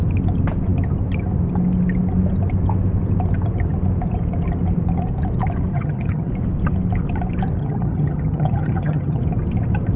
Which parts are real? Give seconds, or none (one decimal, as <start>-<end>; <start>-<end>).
0.0-5.7; 6.3-7.6; 9.2-10.0